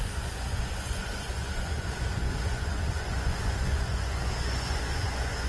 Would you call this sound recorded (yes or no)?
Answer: no